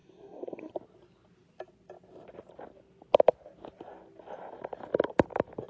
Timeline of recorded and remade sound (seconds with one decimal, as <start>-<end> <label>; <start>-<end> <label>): 0.0-0.7 remade; 0.7-5.7 recorded